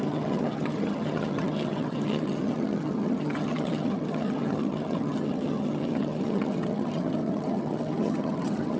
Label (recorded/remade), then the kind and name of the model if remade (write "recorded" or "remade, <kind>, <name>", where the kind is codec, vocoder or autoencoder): remade, vocoder, HiFi-GAN